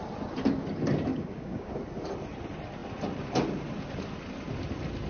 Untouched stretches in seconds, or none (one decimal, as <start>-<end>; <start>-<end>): 0.0-1.1; 1.7-5.1